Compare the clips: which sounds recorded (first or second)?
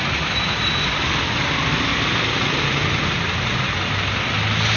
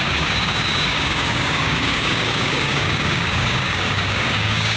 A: first